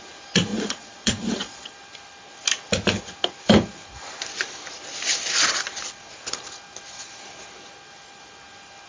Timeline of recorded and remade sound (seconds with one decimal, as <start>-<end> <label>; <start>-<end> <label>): 0.0-0.5 recorded; 0.5-1.7 remade; 1.7-8.9 recorded